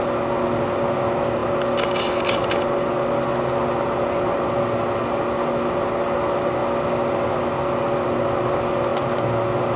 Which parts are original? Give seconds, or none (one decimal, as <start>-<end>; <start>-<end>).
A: 0.0-9.8